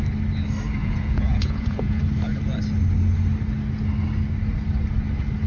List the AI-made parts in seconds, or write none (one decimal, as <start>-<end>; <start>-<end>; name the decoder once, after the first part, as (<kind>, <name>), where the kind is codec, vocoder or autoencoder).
0.8-2.0 (vocoder, Vocos)